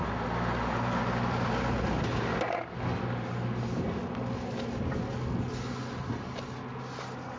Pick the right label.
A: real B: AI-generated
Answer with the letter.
A